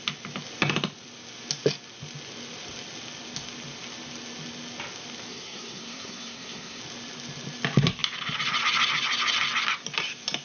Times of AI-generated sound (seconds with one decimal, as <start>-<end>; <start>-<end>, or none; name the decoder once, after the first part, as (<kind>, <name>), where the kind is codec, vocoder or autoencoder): 5.3-6.8 (codec, SNAC)